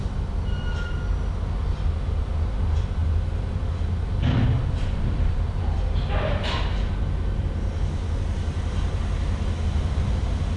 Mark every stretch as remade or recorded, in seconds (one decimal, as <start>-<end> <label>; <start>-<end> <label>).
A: 0.0-10.6 recorded